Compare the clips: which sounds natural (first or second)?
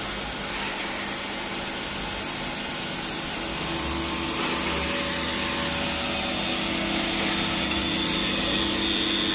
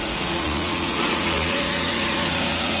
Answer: first